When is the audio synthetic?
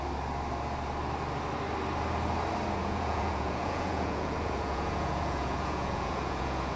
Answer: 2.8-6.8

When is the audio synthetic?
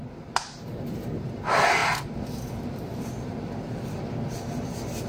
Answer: none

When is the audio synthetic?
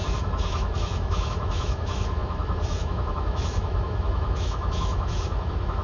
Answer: 0.0-5.8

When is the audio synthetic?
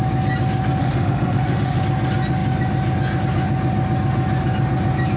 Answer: 0.8-1.8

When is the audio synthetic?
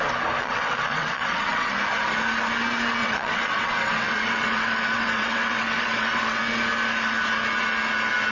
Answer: 0.4-1.7; 3.0-6.4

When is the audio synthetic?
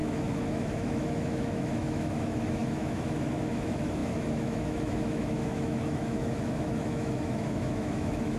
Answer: 0.0-8.4